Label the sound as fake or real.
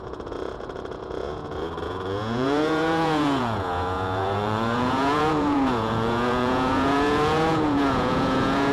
fake